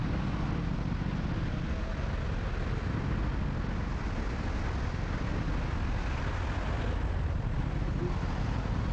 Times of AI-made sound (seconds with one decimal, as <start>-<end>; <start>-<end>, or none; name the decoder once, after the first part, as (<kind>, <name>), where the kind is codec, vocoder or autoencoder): none